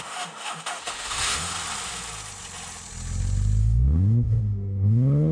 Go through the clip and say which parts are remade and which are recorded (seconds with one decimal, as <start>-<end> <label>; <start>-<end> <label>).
0.0-1.5 remade; 1.5-3.6 recorded; 3.6-5.3 remade